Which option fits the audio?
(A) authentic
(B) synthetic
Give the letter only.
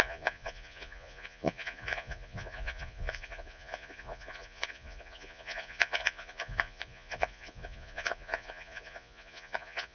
B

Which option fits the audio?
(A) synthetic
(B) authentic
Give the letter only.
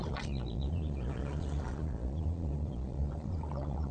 A